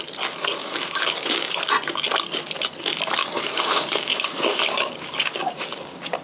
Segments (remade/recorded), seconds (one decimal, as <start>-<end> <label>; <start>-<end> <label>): 0.0-0.6 recorded; 0.6-1.6 remade; 1.6-3.2 recorded; 3.2-6.2 remade